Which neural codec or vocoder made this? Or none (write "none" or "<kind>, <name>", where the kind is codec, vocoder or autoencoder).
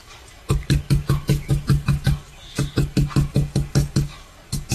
codec, DAC